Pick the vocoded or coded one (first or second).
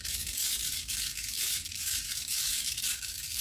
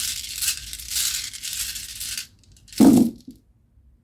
first